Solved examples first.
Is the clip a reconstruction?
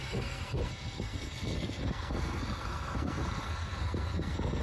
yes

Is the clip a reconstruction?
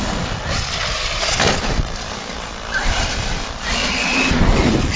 no